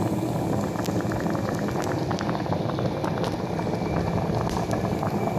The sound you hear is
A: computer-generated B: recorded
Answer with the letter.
B